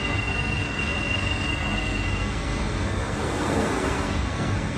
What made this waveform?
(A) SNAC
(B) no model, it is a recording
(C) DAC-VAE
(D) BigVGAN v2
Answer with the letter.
A